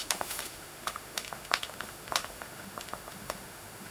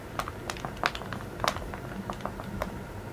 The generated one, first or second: first